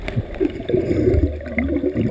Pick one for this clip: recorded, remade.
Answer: recorded